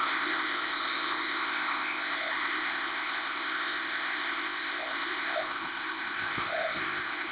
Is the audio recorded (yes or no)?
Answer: no